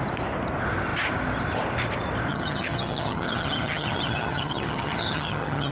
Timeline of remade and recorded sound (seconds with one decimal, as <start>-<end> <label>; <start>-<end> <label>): 0.0-2.3 recorded; 2.3-5.7 remade